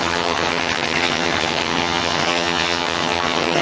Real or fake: fake